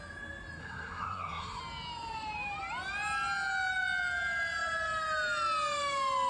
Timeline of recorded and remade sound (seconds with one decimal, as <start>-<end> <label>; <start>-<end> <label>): 0.0-0.6 recorded; 0.6-1.6 remade; 1.6-6.3 recorded